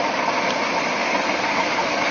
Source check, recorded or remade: recorded